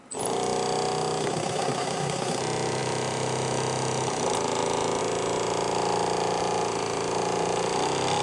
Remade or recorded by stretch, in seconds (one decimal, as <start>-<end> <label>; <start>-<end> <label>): 0.0-1.2 recorded; 1.2-2.4 remade; 2.4-8.2 recorded